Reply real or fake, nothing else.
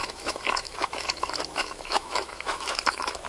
fake